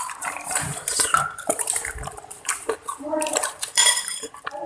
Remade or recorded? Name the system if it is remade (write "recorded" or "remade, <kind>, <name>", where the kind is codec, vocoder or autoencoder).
remade, vocoder, BigVGAN v2